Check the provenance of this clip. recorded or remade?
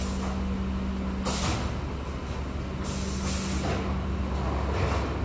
recorded